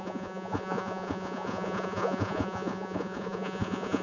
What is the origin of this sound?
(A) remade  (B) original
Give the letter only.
A